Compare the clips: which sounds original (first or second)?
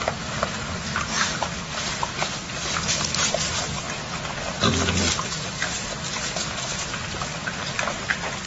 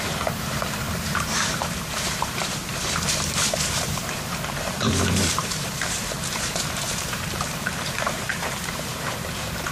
first